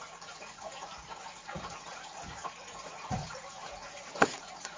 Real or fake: fake